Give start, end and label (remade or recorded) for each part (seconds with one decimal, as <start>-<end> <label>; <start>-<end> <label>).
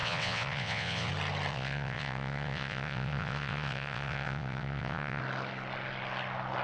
0.0-1.1 remade; 1.1-1.5 recorded; 1.5-5.2 remade; 5.2-6.6 recorded